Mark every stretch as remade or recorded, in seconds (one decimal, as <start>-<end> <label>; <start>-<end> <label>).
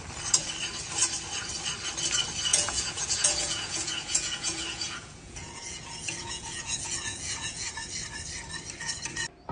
0.0-2.5 recorded; 2.5-7.7 remade; 7.7-9.5 recorded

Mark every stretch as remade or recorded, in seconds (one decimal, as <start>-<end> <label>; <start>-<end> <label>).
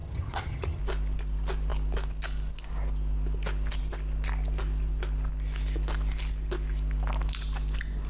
0.0-0.8 remade; 0.8-8.1 recorded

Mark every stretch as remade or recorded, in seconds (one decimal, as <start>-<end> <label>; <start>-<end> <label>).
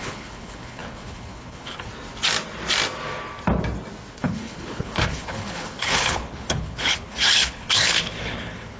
0.0-1.9 remade; 1.9-4.1 recorded; 4.1-8.8 remade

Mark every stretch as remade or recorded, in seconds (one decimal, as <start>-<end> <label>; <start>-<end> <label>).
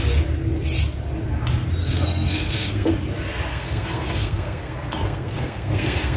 0.0-1.8 recorded; 1.8-2.9 remade; 2.9-3.5 recorded; 3.5-6.2 remade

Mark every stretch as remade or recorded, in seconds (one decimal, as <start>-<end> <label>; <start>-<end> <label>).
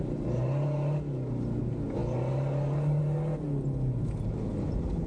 0.0-5.1 recorded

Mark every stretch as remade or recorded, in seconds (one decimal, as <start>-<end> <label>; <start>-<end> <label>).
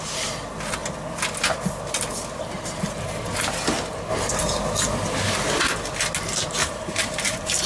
0.0-6.6 recorded; 6.6-7.7 remade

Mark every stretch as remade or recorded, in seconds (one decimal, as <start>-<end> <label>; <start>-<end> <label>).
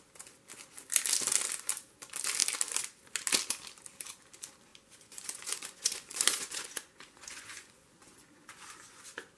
0.0-4.7 recorded; 4.7-9.0 remade; 9.0-9.4 recorded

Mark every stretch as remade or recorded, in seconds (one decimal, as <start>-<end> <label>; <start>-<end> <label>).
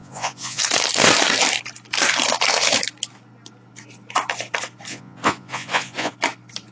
0.0-0.6 remade; 0.6-4.9 recorded; 4.9-6.1 remade; 6.1-6.7 recorded